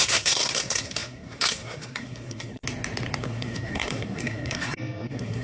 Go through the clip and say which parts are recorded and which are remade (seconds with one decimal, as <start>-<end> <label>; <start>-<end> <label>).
0.0-2.6 remade; 2.6-3.2 recorded; 3.2-5.4 remade